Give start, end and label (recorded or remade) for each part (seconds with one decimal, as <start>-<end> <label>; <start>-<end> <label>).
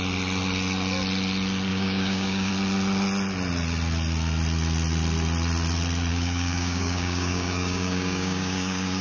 0.0-1.7 recorded; 1.7-2.5 remade; 2.5-6.1 recorded; 6.1-9.0 remade